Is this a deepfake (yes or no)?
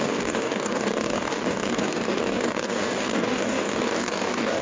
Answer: yes